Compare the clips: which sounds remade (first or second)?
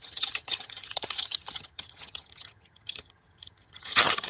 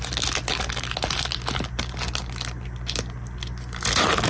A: first